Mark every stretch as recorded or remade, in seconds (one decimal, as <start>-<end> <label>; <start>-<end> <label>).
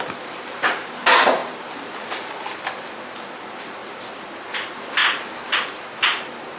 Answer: 0.0-6.6 recorded